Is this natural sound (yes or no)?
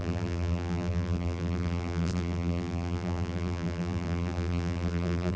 no